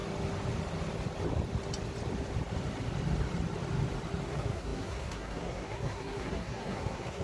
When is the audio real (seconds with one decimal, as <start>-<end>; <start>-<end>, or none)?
0.0-4.3